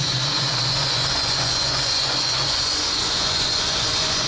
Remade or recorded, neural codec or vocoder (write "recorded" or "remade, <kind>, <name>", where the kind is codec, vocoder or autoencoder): remade, vocoder, Vocos